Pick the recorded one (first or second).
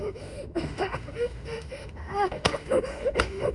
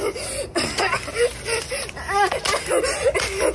second